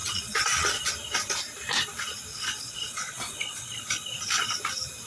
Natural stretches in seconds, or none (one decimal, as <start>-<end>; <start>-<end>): 0.9-2.3; 3.8-5.1